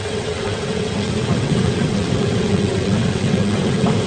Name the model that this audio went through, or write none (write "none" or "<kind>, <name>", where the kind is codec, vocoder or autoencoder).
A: vocoder, WaveNeXt